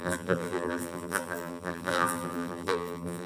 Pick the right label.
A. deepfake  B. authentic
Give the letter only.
A